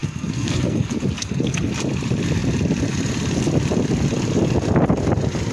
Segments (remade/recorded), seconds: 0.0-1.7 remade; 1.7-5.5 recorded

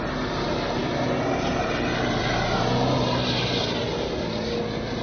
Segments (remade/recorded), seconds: 0.0-5.0 recorded

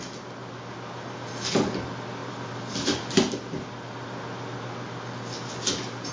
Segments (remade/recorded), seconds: 0.0-6.1 recorded

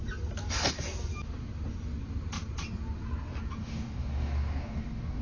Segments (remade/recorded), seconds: 0.0-3.6 recorded; 3.6-5.2 remade

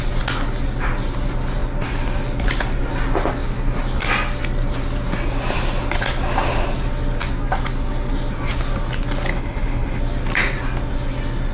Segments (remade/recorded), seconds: 0.0-9.3 recorded; 9.3-10.0 remade; 10.0-11.5 recorded